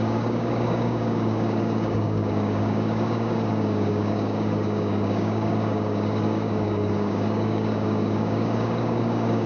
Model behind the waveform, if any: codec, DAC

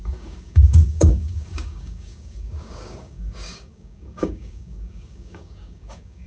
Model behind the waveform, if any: codec, DAC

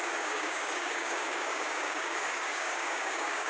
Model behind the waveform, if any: codec, DAC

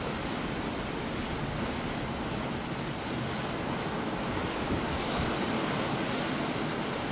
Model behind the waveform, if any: none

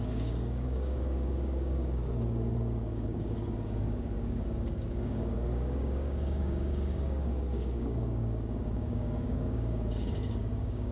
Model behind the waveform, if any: codec, DAC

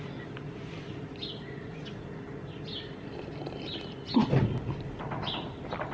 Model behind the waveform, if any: none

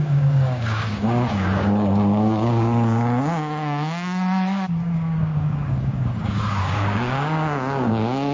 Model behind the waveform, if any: codec, DAC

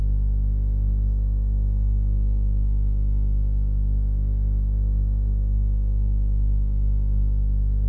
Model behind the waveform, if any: codec, DAC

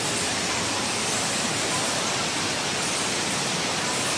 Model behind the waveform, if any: none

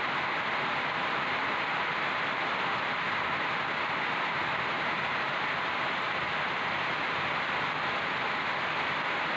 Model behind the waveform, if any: none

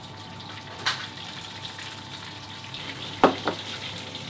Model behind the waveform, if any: none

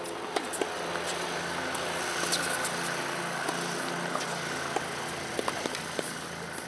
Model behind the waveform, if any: none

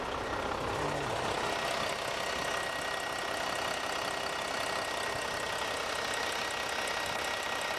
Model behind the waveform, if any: none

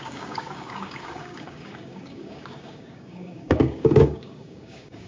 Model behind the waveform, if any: codec, DAC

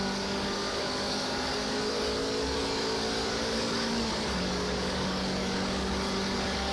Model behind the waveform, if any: codec, DAC